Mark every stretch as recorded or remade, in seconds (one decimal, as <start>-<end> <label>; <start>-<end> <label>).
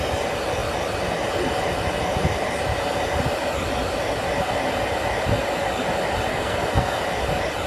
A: 0.0-6.3 recorded; 6.3-7.0 remade; 7.0-7.7 recorded